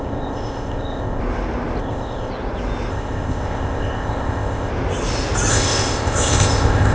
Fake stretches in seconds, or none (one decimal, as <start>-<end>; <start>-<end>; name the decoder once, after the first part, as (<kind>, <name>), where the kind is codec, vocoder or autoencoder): 0.0-1.2 (codec, ZipCodec); 1.8-2.3; 2.9-4.7; 5.5-6.9